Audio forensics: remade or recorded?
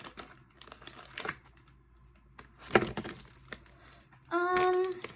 recorded